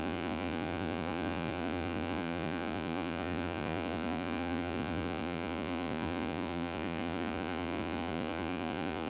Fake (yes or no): yes